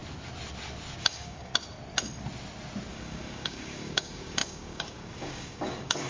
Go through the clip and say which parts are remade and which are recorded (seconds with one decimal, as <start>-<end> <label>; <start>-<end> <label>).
0.0-1.0 recorded; 1.0-1.5 remade; 1.5-2.9 recorded; 2.9-6.1 remade